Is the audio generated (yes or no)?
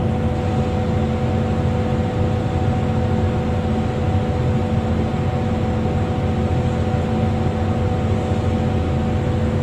no